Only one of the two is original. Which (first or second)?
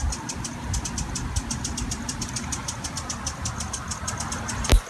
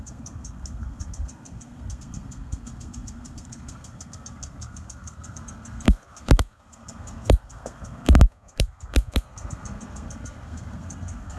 first